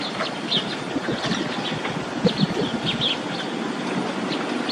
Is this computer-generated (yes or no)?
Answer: no